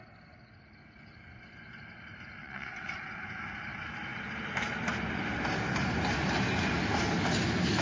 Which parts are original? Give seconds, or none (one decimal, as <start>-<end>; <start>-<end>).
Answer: 0.0-2.4; 3.0-7.8